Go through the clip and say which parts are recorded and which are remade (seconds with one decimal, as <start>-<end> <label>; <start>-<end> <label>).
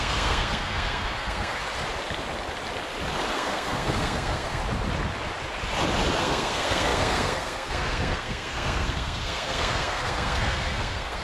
0.0-1.6 remade; 1.6-3.3 recorded; 3.3-4.6 remade; 4.6-6.2 recorded; 6.2-11.2 remade